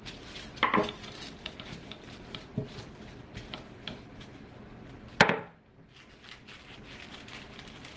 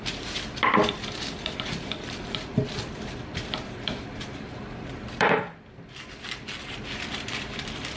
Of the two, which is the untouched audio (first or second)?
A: first